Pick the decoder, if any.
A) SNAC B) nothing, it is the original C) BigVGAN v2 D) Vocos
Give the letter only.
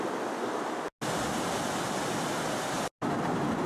B